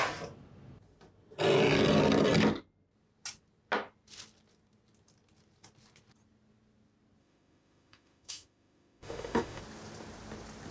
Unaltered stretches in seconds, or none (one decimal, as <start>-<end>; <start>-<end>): 0.0-7.2; 9.6-10.7